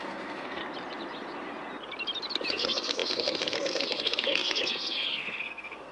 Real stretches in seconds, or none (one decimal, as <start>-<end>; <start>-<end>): 0.6-2.5